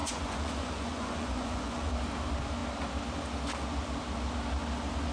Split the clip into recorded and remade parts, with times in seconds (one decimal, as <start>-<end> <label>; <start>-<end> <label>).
0.0-1.9 remade; 1.9-5.1 recorded